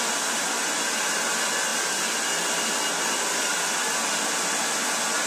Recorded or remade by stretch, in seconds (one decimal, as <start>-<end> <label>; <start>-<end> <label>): 0.0-5.3 recorded